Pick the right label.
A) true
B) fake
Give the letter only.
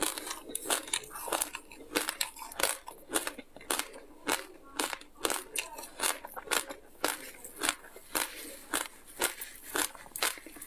A